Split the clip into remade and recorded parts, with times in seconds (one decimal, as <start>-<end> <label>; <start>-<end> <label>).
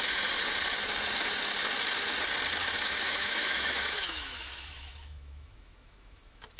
0.0-2.6 recorded; 2.6-6.6 remade